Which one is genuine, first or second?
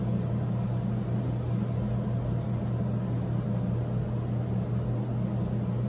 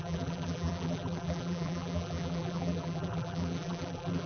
first